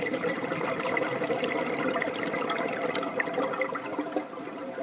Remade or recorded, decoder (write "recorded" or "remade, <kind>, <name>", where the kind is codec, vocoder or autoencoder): recorded